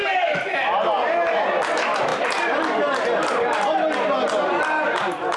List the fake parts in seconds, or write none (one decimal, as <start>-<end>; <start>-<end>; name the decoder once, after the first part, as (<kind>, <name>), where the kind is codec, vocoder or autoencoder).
none